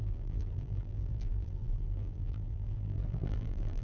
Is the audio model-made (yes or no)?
yes